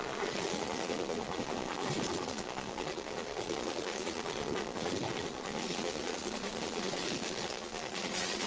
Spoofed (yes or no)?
yes